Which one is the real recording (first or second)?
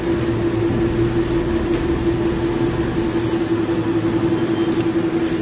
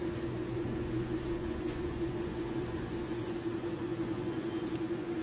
first